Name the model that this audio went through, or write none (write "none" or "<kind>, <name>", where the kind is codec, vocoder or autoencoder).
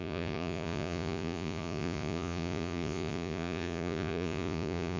vocoder, Vocos